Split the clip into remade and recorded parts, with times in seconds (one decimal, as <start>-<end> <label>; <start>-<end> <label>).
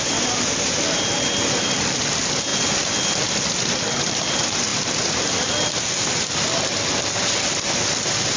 0.0-2.5 remade; 2.5-3.8 recorded; 3.8-8.4 remade